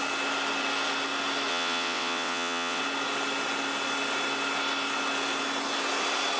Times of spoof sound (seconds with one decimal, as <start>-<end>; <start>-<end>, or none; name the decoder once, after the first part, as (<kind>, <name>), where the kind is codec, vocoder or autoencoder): 1.5-2.8 (vocoder, WaveNeXt)